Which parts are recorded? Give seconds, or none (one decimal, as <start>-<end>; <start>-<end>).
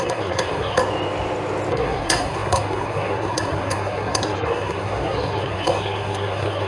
0.8-1.7